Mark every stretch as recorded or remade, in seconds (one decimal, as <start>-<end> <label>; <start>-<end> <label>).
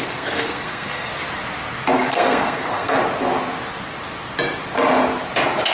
0.0-1.1 remade; 1.1-2.1 recorded; 2.1-3.0 remade; 3.0-5.7 recorded